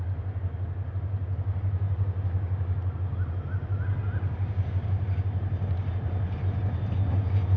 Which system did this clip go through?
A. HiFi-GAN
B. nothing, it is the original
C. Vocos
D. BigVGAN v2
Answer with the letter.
B